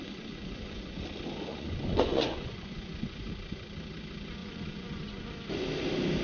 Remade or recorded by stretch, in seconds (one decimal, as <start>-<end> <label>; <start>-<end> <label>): 0.0-1.1 remade; 1.1-1.5 recorded; 1.5-3.3 remade; 3.3-4.4 recorded; 4.4-5.3 remade; 5.3-6.2 recorded